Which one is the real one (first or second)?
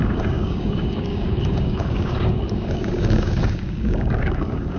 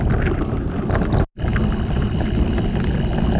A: second